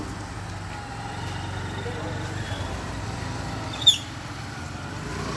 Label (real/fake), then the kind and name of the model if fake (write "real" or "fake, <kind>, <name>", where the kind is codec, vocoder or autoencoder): real